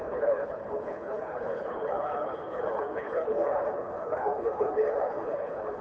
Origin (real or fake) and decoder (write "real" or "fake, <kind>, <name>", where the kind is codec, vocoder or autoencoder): fake, codec, HILCodec